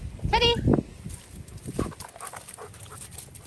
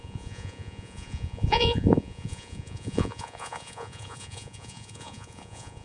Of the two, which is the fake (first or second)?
second